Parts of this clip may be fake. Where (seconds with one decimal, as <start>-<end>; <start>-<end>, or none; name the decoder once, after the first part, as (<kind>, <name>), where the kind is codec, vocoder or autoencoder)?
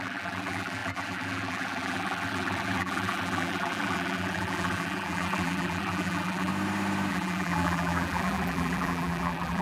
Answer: 0.0-6.5 (vocoder, BigVGAN v2); 7.1-9.6